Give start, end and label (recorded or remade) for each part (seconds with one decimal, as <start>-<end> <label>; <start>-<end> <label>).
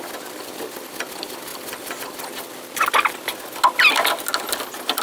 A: 0.0-5.0 recorded